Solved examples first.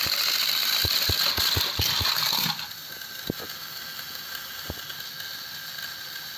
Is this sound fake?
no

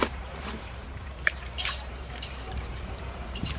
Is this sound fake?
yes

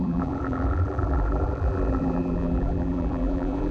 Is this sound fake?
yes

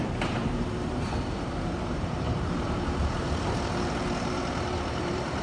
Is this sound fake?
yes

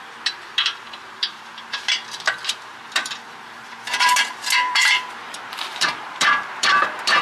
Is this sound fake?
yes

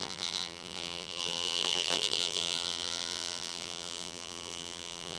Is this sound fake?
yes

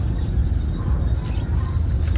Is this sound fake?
no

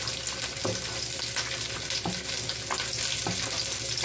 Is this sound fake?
no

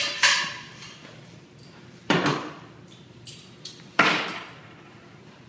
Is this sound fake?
yes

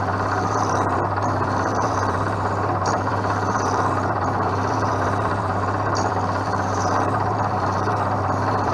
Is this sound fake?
yes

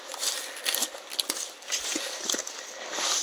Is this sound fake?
no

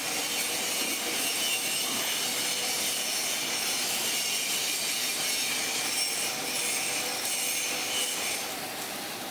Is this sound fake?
no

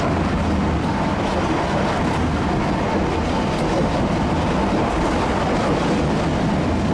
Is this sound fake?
no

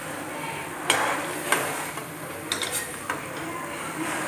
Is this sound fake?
yes